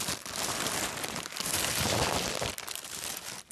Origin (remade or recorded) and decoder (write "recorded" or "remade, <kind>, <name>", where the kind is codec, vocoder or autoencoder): recorded